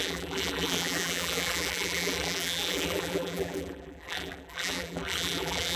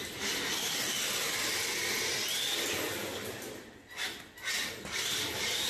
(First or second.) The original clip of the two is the second